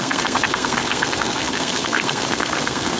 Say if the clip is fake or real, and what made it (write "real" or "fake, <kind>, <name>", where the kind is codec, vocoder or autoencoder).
fake, codec, SNAC